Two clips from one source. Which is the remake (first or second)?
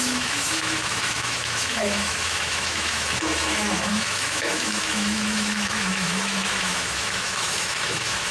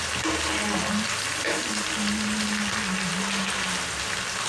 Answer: first